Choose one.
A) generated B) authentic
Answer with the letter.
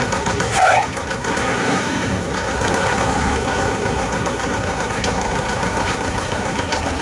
A